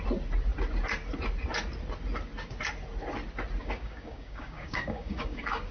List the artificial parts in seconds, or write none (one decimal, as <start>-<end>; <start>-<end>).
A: 3.6-5.7